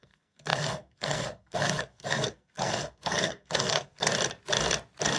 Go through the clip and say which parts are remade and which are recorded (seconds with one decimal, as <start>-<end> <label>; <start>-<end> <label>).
0.0-4.1 remade; 4.1-5.2 recorded